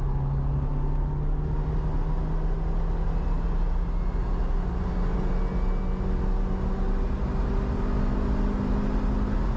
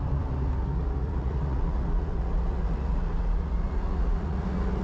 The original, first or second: first